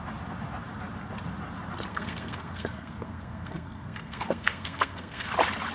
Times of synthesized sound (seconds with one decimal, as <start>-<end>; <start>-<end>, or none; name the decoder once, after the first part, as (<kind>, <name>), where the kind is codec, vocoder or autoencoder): 1.9-5.3 (codec, SNAC)